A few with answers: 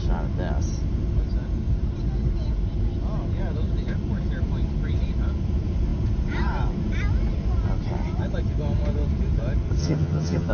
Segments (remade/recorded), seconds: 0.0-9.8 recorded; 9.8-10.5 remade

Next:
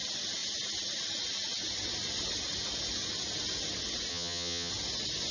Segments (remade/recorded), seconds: 0.0-4.1 recorded; 4.1-4.7 remade; 4.7-5.3 recorded

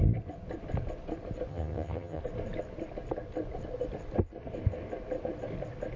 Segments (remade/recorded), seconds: 0.0-1.5 recorded; 1.5-2.2 remade; 2.2-6.0 recorded

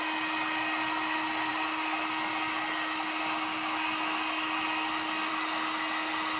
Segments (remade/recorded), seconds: 0.0-6.4 recorded

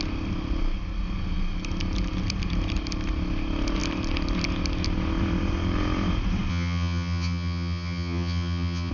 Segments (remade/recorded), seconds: 0.0-6.5 recorded; 6.5-8.9 remade

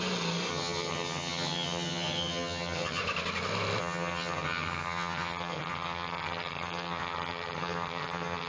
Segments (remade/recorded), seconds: 0.0-0.5 recorded; 0.5-3.0 remade; 3.0-3.8 recorded; 3.8-8.5 remade

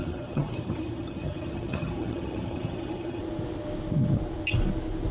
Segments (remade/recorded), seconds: 0.0-3.2 remade; 3.2-5.1 recorded